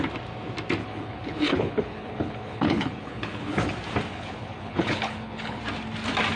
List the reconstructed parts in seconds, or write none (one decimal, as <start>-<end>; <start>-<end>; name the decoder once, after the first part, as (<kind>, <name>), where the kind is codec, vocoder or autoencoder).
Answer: 0.8-3.6 (codec, HILCodec); 4.1-5.6